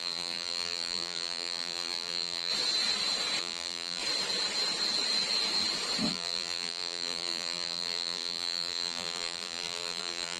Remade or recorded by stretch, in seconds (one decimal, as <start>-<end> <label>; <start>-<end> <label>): 0.0-2.5 remade; 2.5-3.4 recorded; 3.4-4.0 remade; 4.0-6.1 recorded; 6.1-10.4 remade